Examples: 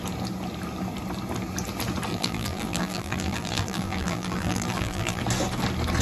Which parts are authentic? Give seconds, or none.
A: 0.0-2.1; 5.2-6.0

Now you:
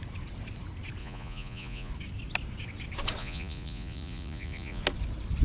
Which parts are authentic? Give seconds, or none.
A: 0.0-1.0; 1.9-3.2; 4.8-5.4